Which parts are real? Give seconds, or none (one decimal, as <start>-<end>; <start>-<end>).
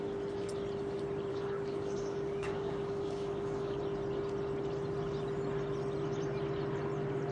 0.0-1.3; 3.8-7.3